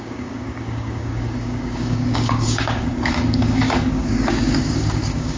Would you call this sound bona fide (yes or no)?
no